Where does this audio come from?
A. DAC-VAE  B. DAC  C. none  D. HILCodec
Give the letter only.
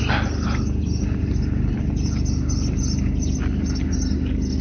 C